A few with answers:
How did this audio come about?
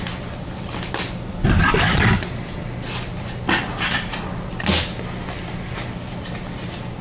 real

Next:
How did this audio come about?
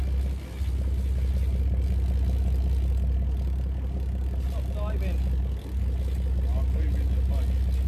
real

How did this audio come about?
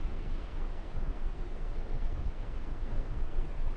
fake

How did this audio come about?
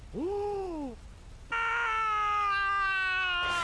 real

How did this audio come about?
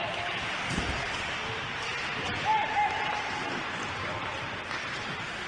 fake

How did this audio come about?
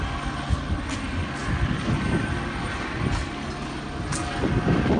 real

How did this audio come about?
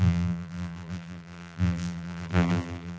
fake